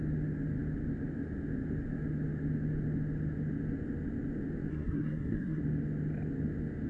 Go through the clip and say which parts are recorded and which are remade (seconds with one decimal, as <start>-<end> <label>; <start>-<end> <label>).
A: 0.0-4.7 recorded; 4.7-5.6 remade; 5.6-6.9 recorded

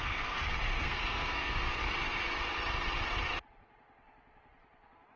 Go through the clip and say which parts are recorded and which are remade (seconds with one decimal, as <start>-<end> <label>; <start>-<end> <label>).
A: 0.0-1.8 remade; 1.8-5.2 recorded

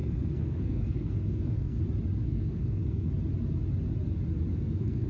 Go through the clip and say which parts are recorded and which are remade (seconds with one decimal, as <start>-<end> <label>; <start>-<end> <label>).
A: 0.0-1.8 remade; 1.8-2.2 recorded; 2.2-3.1 remade; 3.1-4.5 recorded; 4.5-5.1 remade